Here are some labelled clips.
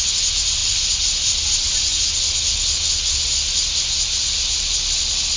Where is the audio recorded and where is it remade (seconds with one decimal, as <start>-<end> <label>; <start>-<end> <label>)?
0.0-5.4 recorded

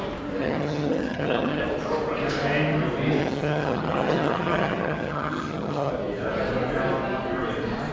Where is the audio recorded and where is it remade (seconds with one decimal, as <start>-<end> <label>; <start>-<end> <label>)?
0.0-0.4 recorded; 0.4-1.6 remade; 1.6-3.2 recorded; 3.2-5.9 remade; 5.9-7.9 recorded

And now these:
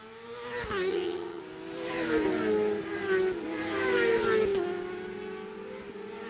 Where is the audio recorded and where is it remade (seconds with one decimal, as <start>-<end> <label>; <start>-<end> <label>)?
0.0-0.9 recorded; 0.9-1.4 remade; 1.4-6.3 recorded

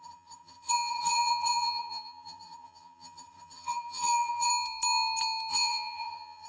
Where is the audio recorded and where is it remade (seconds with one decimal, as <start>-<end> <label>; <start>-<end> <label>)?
0.0-4.5 remade; 4.5-5.5 recorded; 5.5-6.5 remade